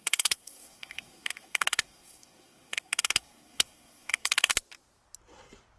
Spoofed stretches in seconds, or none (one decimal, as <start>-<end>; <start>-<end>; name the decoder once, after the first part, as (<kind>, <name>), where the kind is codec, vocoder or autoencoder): 0.0-4.5 (codec, SNAC)